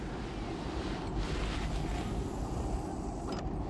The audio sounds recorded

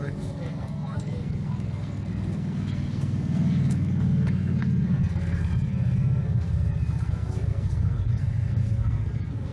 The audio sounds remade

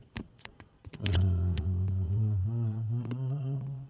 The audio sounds remade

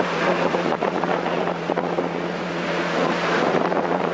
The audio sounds remade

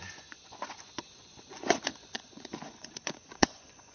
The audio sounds remade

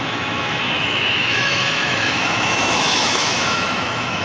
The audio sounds remade